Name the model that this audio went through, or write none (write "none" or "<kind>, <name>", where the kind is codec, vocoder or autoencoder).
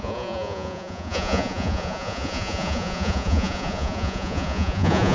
vocoder, Vocos